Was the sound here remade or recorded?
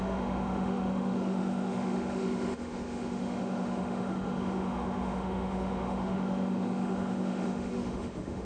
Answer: remade